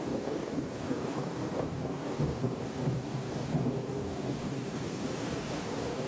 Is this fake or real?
fake